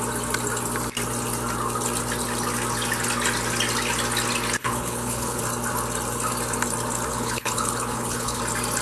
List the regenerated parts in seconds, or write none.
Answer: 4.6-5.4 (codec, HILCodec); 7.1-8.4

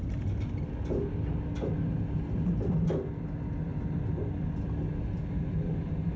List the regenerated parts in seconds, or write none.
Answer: none

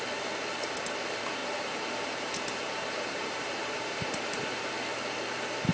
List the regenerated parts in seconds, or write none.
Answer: 1.4-4.7 (vocoder, BigVGAN v2)

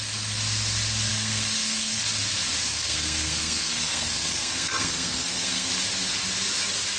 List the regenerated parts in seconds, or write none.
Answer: 1.1-2.0 (codec, SNAC); 2.7-5.7

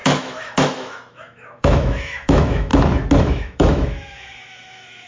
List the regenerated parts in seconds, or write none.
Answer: 0.0-2.7 (autoencoder, DAC-VAE); 3.2-5.1

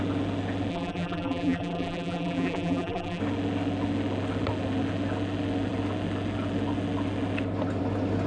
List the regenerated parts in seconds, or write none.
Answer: 0.7-3.2 (vocoder, BigVGAN v2)

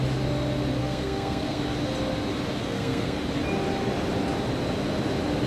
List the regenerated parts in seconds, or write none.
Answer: 0.8-1.6 (codec, SNAC); 2.6-3.2

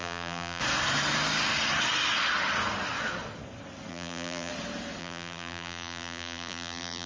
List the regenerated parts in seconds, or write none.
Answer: 0.0-0.6 (vocoder, BigVGAN v2); 3.9-4.5; 5.0-7.1